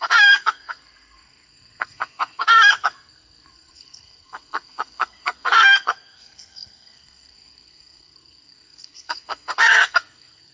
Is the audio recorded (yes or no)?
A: no